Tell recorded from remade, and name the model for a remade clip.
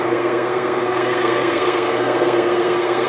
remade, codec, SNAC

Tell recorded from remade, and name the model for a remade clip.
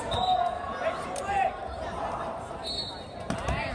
recorded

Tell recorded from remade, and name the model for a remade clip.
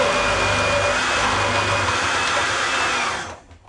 recorded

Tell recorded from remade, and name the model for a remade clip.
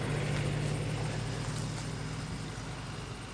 recorded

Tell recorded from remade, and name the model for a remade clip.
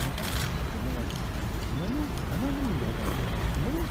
recorded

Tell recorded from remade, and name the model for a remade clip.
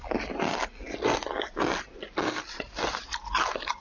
recorded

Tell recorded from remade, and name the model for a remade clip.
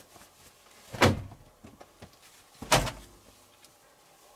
recorded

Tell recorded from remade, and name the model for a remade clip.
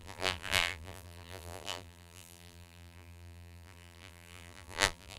remade, vocoder, BigVGAN v2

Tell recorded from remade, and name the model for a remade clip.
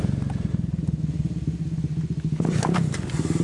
recorded